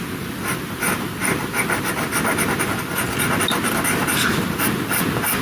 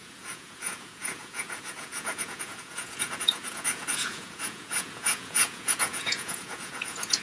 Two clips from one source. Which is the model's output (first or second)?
second